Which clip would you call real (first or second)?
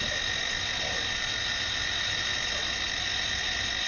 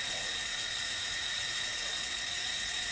first